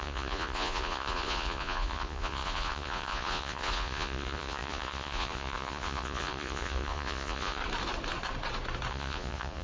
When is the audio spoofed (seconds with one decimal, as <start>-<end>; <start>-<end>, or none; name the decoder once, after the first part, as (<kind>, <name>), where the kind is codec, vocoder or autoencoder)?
0.0-7.6 (vocoder, Vocos); 8.9-9.6